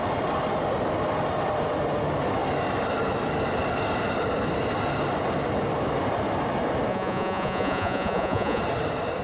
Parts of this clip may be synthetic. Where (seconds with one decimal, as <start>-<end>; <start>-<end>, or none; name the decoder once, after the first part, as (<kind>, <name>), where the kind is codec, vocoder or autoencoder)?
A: 6.9-8.6 (vocoder, Vocos)